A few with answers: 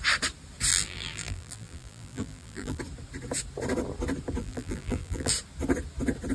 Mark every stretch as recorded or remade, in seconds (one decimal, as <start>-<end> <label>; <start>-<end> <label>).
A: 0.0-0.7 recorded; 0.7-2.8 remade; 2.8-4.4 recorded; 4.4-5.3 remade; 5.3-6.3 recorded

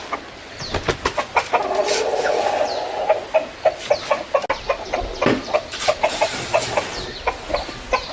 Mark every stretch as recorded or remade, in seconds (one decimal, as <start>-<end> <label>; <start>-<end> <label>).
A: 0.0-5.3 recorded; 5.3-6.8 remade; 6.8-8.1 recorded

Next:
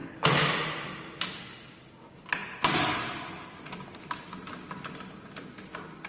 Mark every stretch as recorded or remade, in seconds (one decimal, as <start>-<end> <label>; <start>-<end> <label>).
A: 0.0-1.1 remade; 1.1-6.1 recorded

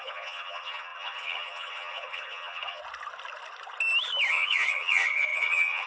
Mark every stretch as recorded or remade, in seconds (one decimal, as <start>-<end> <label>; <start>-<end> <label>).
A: 0.0-2.8 remade; 2.8-4.3 recorded; 4.3-5.9 remade